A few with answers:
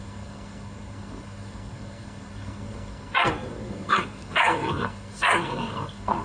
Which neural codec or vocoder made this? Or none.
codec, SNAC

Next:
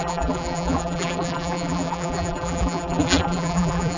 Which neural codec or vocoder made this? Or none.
vocoder, BigVGAN v2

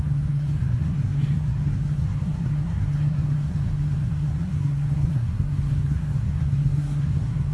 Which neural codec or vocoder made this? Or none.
codec, SNAC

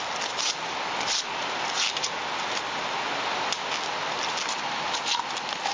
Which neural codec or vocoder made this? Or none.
none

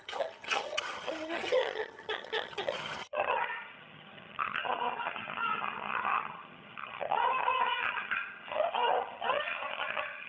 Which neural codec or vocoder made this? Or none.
vocoder, HiFi-GAN